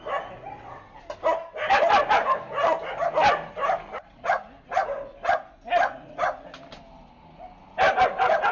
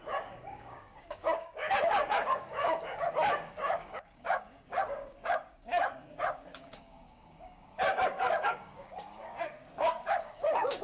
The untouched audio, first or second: first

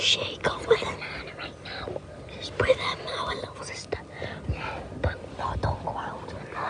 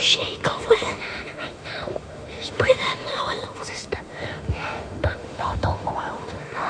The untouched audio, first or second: first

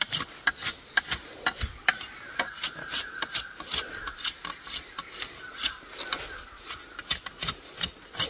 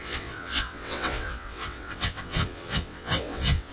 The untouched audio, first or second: first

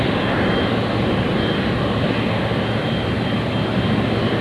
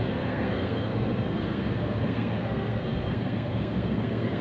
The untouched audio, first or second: first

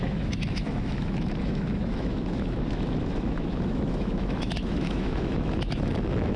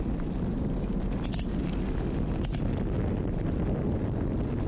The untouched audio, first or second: second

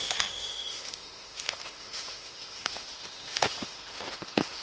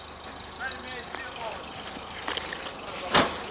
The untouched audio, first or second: second